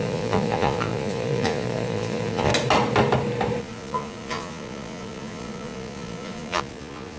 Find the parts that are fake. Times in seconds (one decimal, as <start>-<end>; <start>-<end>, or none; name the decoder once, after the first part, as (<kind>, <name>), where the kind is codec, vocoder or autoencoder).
0.0-2.5 (vocoder, Vocos); 3.6-7.2